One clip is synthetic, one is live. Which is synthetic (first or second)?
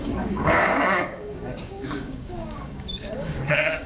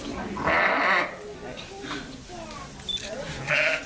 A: first